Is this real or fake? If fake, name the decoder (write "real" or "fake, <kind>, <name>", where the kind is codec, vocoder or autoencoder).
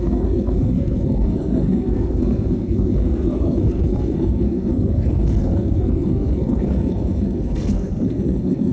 fake, codec, SNAC